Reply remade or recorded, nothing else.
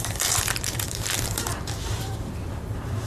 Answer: remade